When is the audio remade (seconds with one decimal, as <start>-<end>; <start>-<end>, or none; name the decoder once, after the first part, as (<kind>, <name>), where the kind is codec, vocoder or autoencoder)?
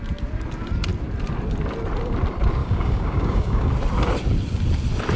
2.6-3.7 (codec, DAC)